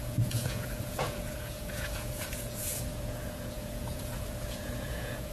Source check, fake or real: fake